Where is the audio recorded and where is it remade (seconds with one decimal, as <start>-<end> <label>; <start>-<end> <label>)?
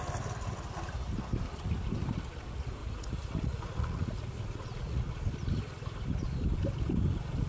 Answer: 0.0-2.8 recorded; 2.8-5.2 remade; 5.2-7.5 recorded